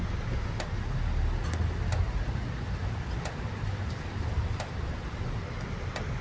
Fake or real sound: real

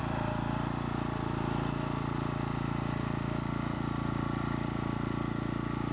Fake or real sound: fake